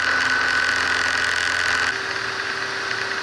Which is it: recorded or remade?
recorded